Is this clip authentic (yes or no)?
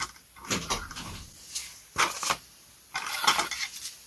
yes